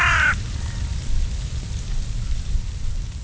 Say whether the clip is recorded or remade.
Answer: recorded